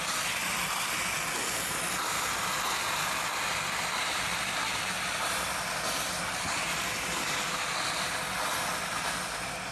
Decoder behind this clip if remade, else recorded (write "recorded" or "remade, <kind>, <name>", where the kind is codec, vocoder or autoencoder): recorded